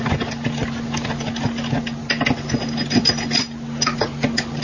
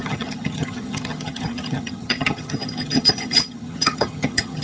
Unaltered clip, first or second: first